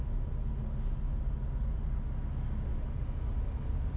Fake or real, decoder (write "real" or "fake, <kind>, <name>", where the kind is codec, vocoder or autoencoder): real